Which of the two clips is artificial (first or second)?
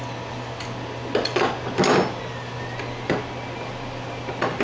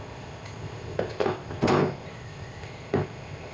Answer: second